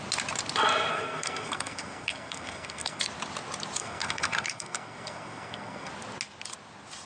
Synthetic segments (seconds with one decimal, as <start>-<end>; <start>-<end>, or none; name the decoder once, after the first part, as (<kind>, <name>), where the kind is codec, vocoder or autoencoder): 0.9-3.0 (codec, SNAC); 3.8-5.9